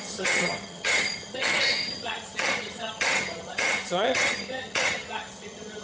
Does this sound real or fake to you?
fake